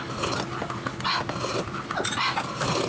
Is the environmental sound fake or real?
real